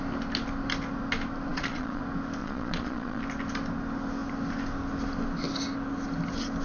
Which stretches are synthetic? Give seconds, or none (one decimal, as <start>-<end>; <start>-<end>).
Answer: 1.5-2.0; 2.4-3.2